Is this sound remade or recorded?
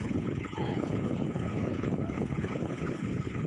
remade